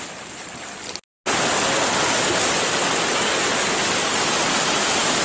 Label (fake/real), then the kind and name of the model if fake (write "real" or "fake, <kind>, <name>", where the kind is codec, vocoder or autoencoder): real